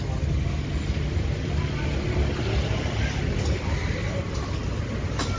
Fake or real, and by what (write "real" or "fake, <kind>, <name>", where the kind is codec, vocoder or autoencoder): real